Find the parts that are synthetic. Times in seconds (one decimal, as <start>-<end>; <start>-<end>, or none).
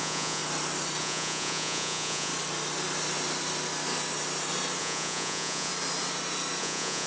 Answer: 0.0-0.4; 1.0-2.3; 4.8-5.7; 6.6-7.1